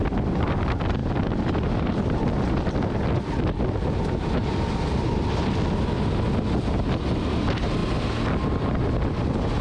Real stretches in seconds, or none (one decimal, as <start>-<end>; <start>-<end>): 0.0-9.6